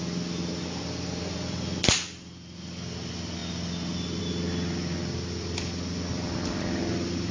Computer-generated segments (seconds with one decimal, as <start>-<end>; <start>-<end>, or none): none